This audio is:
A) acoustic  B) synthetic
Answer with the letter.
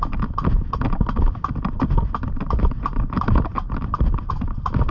A